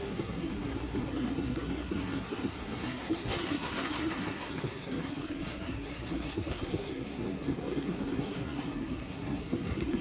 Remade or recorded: remade